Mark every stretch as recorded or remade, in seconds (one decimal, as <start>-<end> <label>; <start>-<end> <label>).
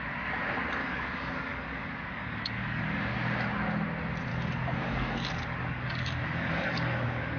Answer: 0.0-0.8 recorded; 0.8-2.8 remade; 2.8-4.3 recorded; 4.3-7.4 remade